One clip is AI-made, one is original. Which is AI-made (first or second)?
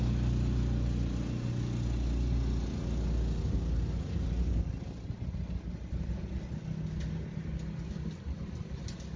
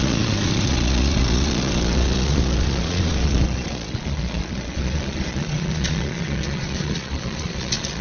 second